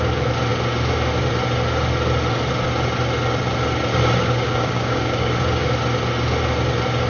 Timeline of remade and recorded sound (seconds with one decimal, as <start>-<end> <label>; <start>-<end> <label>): 0.0-3.9 recorded; 3.9-5.3 remade; 5.3-7.1 recorded